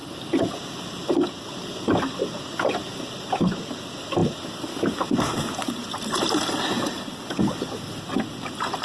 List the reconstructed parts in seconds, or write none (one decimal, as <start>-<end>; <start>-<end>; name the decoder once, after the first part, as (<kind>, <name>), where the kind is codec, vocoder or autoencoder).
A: none

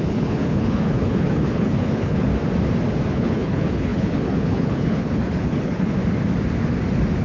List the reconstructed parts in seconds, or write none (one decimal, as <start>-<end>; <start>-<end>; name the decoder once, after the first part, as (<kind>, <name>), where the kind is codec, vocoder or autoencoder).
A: 0.0-2.3 (codec, HILCodec); 3.1-6.0

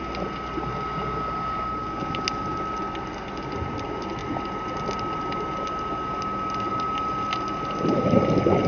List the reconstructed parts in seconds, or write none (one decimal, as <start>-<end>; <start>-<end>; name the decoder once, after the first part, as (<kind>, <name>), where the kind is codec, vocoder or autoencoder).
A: none

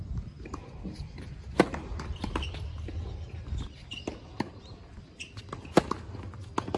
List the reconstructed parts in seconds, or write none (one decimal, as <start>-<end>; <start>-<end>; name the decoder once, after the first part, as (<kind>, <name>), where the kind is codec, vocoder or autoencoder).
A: none

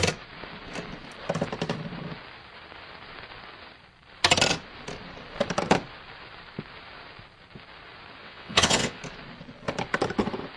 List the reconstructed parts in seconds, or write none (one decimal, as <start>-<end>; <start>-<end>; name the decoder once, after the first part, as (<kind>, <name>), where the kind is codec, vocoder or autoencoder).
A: 8.2-9.0 (vocoder, WaveNeXt)

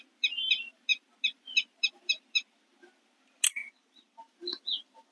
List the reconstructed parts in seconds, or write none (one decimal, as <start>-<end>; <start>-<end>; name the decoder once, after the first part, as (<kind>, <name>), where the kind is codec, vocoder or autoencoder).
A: none

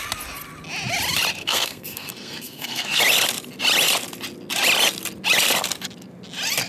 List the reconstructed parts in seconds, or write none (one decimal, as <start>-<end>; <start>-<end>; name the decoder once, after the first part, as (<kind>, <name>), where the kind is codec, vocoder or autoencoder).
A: 1.4-3.0 (codec, SNAC)

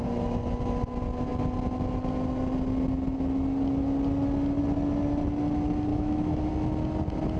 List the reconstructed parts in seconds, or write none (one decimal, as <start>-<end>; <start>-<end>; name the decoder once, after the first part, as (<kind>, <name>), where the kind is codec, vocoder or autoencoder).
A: 5.9-6.5 (autoencoder, DAC-VAE)